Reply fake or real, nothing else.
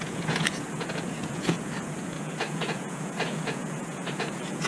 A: fake